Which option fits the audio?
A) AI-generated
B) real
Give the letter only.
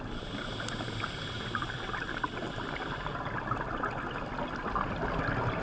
B